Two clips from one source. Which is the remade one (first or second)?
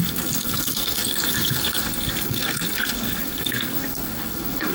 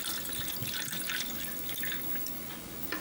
first